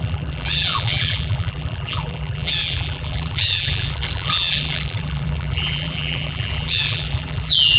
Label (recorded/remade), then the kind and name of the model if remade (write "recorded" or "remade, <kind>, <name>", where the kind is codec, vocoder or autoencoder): remade, vocoder, BigVGAN v2